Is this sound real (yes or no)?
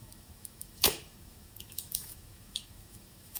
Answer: no